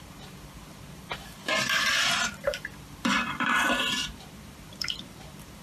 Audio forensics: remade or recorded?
remade